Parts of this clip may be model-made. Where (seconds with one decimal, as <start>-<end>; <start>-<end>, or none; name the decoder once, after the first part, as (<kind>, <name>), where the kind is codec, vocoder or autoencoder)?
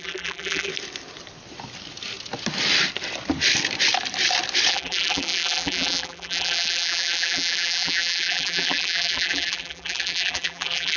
0.0-0.7 (vocoder, BigVGAN v2); 4.7-11.0